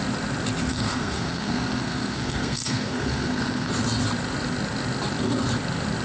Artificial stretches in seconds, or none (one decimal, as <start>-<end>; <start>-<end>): 0.7-3.7